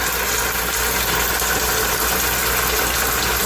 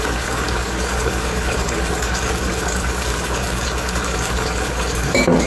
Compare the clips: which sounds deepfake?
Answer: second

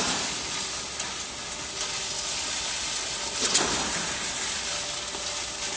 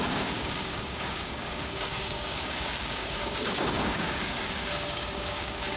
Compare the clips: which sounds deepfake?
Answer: second